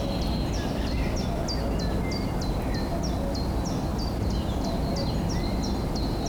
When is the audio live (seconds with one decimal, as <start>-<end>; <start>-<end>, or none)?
0.0-6.3